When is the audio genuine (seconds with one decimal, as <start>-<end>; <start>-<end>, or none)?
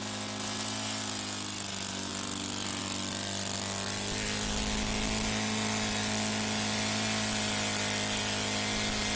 0.0-9.2